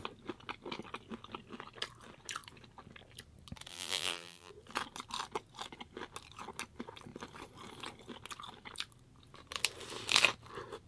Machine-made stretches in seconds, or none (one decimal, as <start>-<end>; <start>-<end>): 3.7-4.5